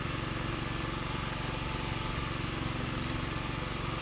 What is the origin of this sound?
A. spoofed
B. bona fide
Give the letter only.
B